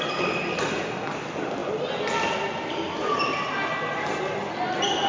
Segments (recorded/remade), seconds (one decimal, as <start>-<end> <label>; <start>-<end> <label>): 0.0-5.1 recorded